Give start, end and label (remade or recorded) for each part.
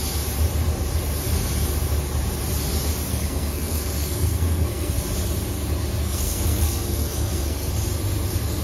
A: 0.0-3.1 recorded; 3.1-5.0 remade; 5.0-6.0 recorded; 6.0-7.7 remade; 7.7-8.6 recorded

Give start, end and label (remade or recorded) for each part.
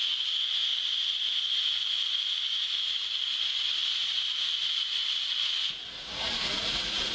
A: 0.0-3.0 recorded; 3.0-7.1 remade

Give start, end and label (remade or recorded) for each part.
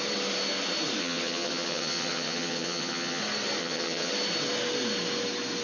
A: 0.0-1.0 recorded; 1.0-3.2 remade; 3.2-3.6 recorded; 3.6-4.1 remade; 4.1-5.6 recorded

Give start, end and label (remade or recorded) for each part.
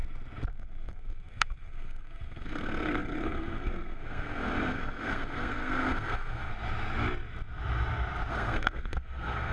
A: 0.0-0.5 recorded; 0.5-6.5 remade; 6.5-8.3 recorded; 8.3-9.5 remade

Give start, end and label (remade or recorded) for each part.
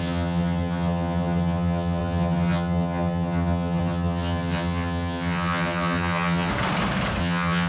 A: 0.0-6.5 remade; 6.5-7.2 recorded; 7.2-7.7 remade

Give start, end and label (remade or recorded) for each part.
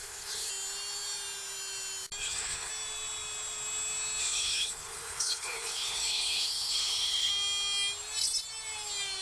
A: 0.0-0.5 remade; 0.5-2.2 recorded; 2.2-2.7 remade; 2.7-4.2 recorded; 4.2-7.3 remade; 7.3-9.2 recorded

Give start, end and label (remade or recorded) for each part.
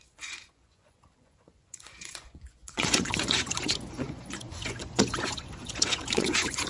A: 0.0-6.7 remade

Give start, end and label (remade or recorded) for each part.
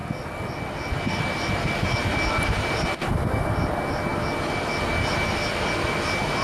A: 0.0-6.4 recorded